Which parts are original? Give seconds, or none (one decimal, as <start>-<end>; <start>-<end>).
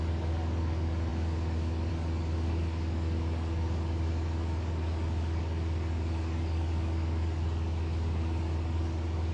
none